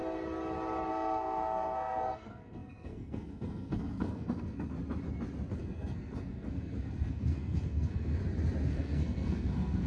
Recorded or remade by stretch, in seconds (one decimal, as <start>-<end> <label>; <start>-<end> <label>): 0.0-0.9 recorded; 0.9-4.7 remade; 4.7-5.5 recorded; 5.5-8.2 remade; 8.2-8.7 recorded; 8.7-9.9 remade